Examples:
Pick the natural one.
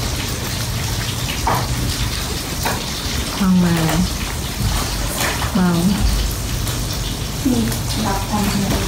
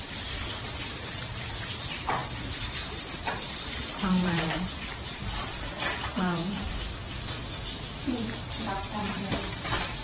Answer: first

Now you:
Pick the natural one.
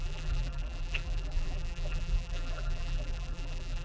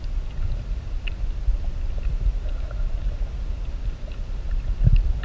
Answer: second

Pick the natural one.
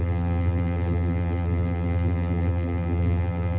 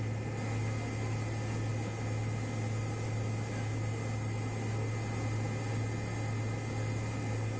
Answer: second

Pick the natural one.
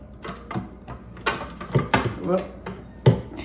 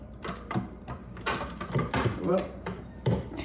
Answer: first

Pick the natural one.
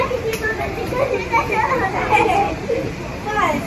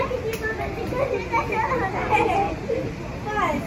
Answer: second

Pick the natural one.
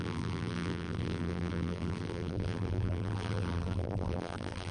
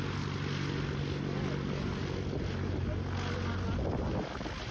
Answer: second